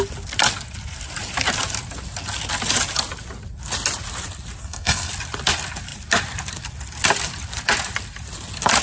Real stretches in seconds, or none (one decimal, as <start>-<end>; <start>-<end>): 0.0-4.6; 5.1-8.8